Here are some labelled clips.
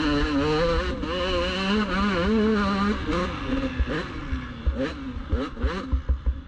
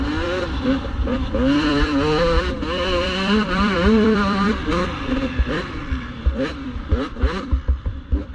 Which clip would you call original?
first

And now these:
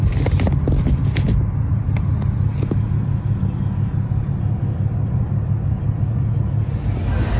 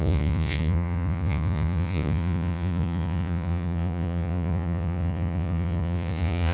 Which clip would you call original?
first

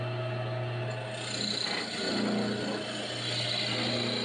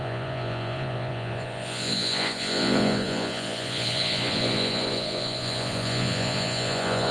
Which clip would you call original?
first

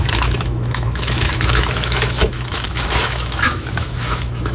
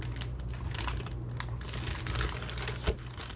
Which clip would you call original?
second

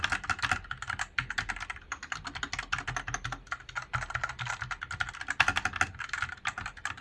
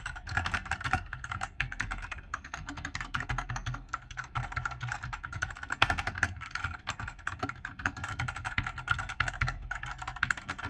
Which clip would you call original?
first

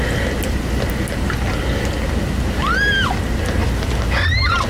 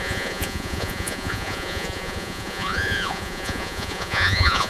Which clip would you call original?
first